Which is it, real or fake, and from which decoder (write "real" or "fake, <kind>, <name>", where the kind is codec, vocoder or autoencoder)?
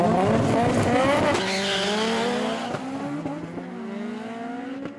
real